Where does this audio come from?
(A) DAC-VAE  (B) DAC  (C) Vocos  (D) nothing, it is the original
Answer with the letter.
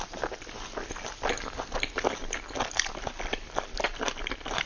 D